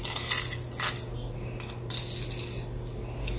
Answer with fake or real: real